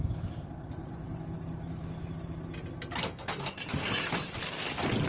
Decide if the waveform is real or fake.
real